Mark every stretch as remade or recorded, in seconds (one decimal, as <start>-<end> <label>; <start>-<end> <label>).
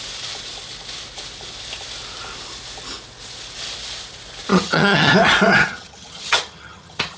0.0-4.5 recorded; 4.5-5.1 remade; 5.1-5.6 recorded; 5.6-7.2 remade